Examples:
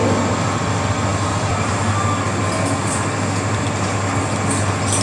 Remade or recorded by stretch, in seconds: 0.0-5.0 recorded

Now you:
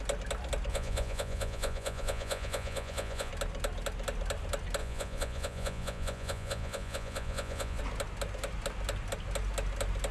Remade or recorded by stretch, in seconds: 0.0-0.7 recorded; 0.7-3.3 remade; 3.3-4.8 recorded; 4.8-7.8 remade; 7.8-10.1 recorded

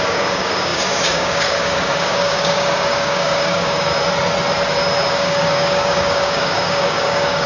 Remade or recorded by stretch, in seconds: 0.0-3.9 remade; 3.9-5.1 recorded; 5.1-7.5 remade